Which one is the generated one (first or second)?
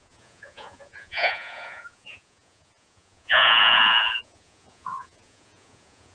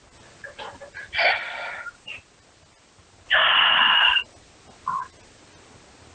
first